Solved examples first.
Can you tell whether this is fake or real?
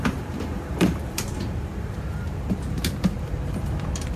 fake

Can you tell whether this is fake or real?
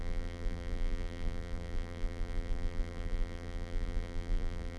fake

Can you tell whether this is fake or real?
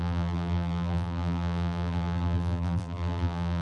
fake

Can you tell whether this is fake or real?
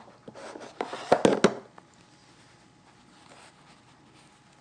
real